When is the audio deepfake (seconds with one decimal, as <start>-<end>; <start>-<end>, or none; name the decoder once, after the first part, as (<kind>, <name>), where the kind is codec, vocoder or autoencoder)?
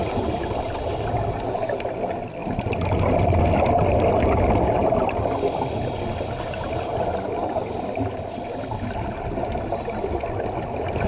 none